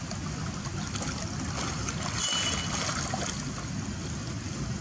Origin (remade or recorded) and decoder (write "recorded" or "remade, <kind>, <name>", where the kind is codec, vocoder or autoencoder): recorded